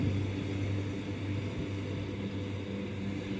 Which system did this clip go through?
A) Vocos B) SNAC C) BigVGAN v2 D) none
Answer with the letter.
D